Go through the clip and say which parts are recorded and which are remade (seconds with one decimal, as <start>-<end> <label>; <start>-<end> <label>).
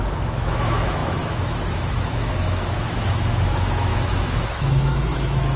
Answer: 0.0-5.6 remade